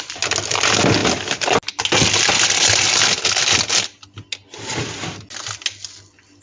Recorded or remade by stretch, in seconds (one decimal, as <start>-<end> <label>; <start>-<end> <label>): 0.0-6.4 recorded